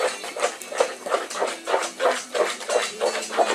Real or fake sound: fake